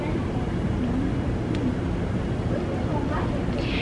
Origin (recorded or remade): recorded